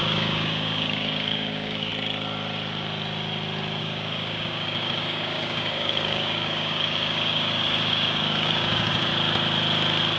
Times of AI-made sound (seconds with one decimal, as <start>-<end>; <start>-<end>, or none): 0.0-1.9; 3.8-9.1